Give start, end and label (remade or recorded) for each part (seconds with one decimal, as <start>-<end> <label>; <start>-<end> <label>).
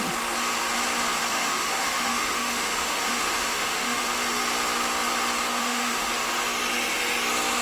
0.0-1.3 recorded; 1.3-4.0 remade; 4.0-5.5 recorded; 5.5-6.1 remade; 6.1-7.6 recorded